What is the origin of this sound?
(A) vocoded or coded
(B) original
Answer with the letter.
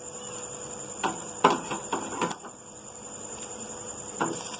B